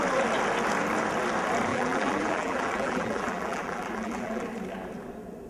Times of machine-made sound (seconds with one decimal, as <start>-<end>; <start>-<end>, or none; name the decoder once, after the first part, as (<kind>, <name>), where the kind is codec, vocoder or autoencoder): 1.7-4.4 (vocoder, BigVGAN v2)